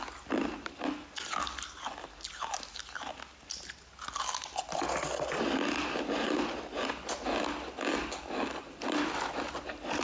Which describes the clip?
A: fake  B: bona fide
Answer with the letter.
B